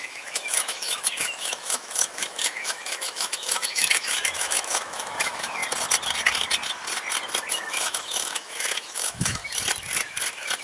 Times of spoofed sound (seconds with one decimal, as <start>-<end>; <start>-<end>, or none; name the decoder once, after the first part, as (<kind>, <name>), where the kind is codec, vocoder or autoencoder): 0.0-5.6 (autoencoder, DAC-VAE); 7.5-9.4